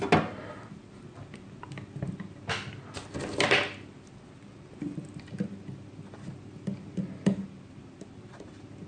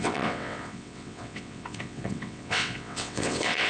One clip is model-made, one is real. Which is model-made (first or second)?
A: second